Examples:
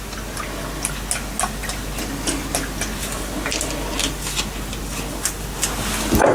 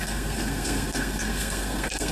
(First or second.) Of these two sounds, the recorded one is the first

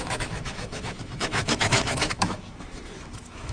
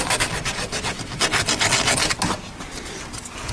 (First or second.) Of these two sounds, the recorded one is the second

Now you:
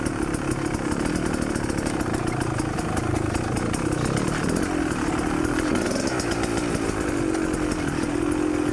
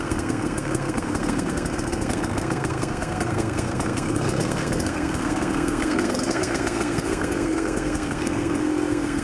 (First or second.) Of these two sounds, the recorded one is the first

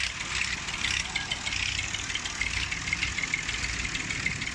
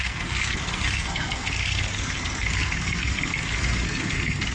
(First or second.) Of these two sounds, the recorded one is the first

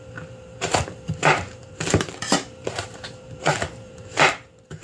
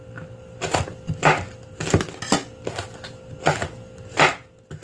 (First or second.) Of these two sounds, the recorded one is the second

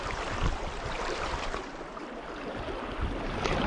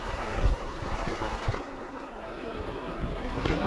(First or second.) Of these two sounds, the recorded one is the first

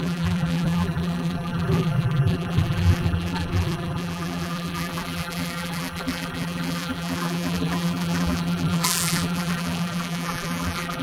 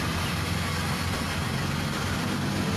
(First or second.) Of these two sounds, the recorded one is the second